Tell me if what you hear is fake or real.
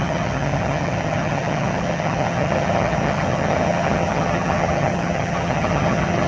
fake